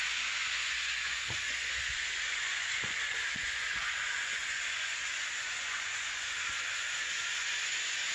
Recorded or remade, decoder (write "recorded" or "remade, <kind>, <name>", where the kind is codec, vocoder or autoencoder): remade, vocoder, Vocos